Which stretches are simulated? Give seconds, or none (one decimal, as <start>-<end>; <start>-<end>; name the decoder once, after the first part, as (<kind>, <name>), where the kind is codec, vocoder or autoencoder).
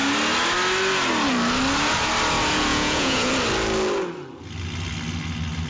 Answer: 2.7-3.3 (vocoder, Vocos)